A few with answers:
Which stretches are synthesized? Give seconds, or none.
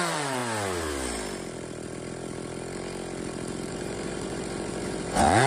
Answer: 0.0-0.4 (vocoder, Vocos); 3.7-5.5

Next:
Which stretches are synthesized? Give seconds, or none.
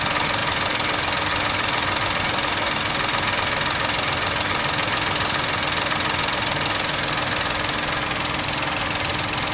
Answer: none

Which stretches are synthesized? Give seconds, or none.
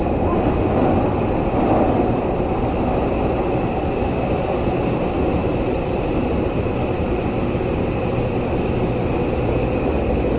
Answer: none